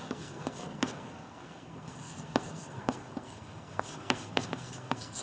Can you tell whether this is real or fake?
fake